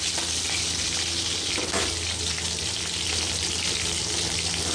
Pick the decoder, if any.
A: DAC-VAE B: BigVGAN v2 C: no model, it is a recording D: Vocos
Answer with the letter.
C